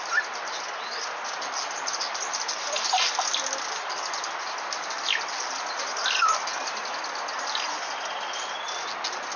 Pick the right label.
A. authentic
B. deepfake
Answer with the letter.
A